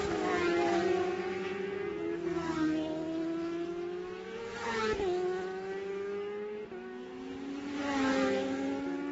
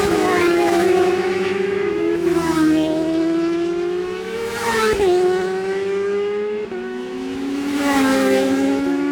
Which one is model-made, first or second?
second